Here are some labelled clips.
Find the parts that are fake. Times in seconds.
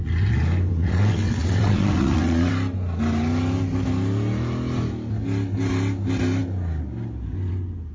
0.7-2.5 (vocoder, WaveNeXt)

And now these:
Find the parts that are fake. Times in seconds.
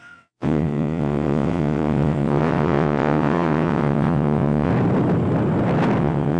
0.0-4.7 (vocoder, WaveNeXt); 6.0-6.4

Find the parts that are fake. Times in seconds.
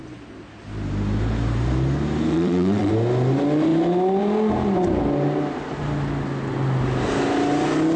2.3-2.9 (vocoder, WaveNeXt)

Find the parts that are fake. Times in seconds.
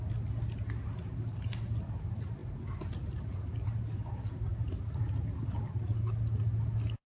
none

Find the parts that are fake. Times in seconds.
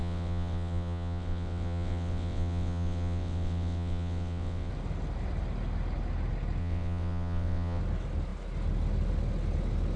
0.0-4.7 (vocoder, WaveNeXt); 6.6-7.8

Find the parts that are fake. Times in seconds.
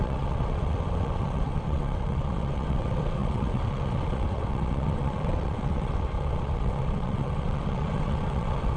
0.0-8.8 (vocoder, WaveNeXt)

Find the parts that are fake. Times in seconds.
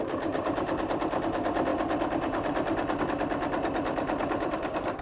none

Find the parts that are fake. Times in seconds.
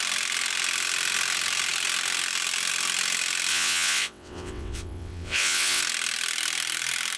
3.5-5.8 (vocoder, WaveNeXt)